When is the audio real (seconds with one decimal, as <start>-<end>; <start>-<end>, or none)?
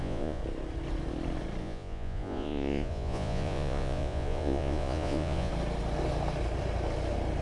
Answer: 0.4-1.6; 5.5-7.4